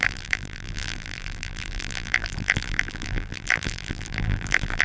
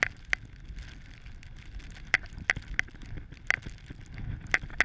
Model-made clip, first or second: first